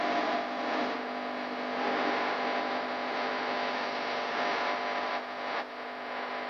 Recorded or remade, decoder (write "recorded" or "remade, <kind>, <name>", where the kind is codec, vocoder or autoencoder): recorded